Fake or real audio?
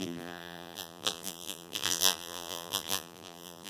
fake